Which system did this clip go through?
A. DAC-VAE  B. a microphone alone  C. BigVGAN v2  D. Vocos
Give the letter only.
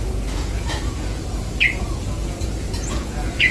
D